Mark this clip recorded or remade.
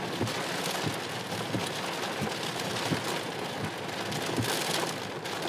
recorded